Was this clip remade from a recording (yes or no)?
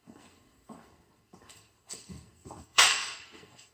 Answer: yes